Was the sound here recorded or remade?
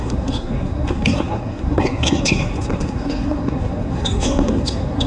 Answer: remade